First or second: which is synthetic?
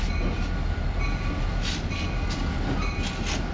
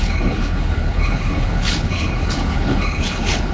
second